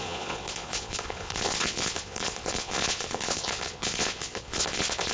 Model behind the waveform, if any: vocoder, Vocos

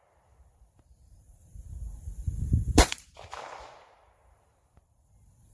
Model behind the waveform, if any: vocoder, BigVGAN v2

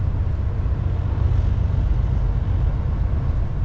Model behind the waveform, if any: none